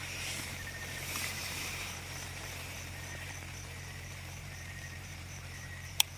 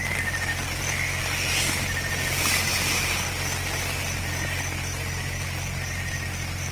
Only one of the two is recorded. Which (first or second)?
second